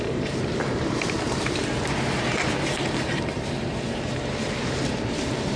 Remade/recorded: remade